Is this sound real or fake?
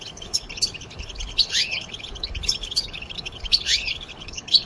fake